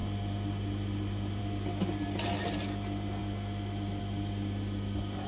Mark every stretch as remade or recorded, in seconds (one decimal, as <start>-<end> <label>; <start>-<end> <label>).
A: 0.0-5.3 recorded